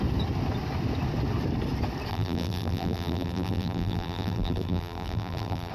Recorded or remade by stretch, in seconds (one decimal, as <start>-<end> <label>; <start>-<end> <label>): 0.0-2.1 recorded; 2.1-5.7 remade